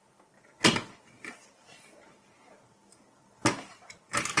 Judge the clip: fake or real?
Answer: real